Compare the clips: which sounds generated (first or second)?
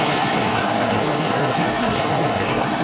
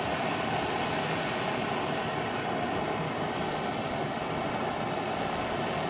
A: first